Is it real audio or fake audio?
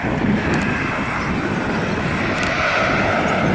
real